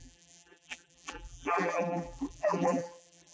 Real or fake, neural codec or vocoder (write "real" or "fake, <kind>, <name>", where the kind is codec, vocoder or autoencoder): fake, vocoder, BigVGAN v2